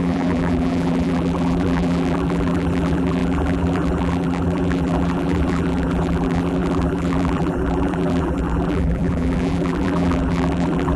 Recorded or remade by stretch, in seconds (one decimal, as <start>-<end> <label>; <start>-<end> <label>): 0.0-11.0 remade